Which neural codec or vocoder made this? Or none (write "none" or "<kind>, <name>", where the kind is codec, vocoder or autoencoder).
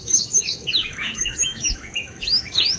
autoencoder, DAC-VAE